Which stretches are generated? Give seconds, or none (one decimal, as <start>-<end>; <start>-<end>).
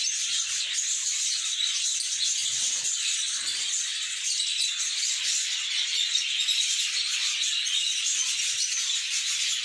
none